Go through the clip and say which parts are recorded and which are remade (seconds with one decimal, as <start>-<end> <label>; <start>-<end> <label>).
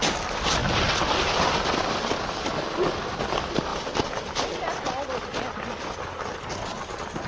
0.0-7.3 recorded